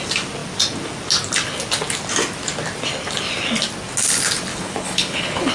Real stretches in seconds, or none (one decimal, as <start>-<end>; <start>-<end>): 0.0-4.5